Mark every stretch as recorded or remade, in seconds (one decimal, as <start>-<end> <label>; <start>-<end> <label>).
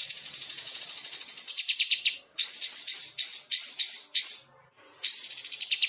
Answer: 0.0-0.8 remade; 0.8-5.9 recorded